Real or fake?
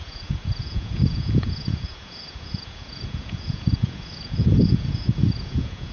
fake